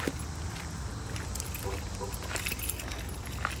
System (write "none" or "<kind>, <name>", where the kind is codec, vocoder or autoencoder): none